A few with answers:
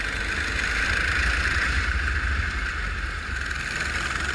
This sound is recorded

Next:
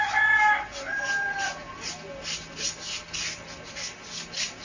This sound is recorded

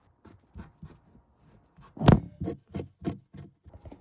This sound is recorded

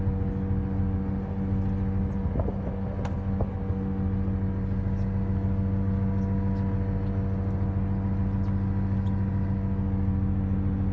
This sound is recorded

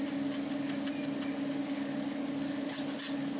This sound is recorded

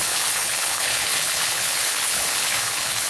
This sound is remade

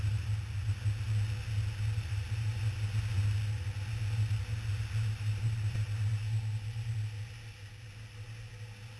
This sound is recorded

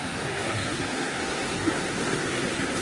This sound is remade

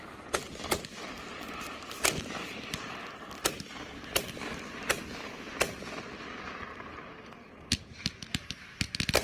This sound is recorded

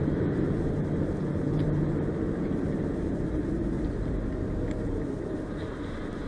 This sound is remade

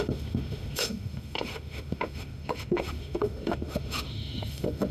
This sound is remade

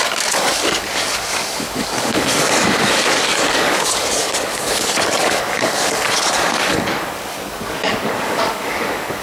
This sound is remade